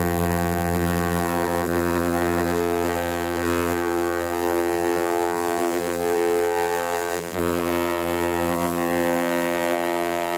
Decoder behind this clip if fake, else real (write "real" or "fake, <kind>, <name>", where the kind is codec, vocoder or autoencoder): fake, vocoder, BigVGAN v2